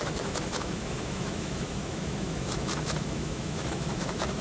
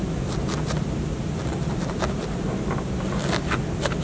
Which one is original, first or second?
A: second